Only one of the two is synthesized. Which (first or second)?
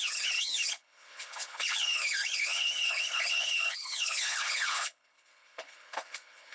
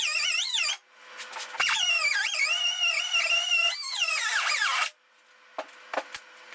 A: first